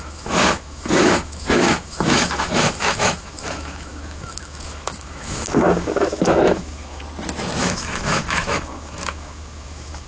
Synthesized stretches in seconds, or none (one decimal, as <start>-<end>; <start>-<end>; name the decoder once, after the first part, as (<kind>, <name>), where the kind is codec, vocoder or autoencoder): 0.0-7.0 (autoencoder, DAC-VAE); 7.6-10.1